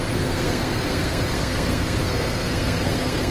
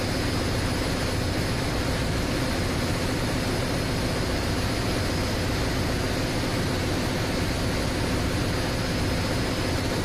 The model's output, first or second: first